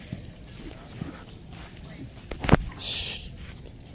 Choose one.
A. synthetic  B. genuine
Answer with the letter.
B